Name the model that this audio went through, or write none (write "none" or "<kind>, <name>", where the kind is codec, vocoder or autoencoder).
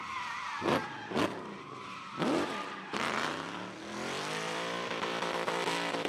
vocoder, BigVGAN v2